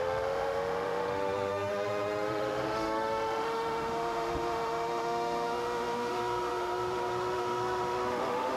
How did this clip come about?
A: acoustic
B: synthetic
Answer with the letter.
B